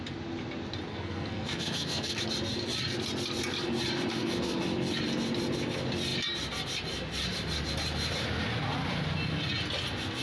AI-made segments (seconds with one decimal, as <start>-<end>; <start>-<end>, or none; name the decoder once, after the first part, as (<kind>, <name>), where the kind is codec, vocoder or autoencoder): 0.9-2.2 (codec, SNAC); 4.1-4.6